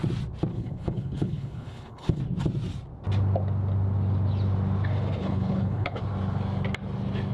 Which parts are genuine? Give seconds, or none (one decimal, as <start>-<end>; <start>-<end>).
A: 0.0-0.5; 2.2-5.2; 6.0-7.3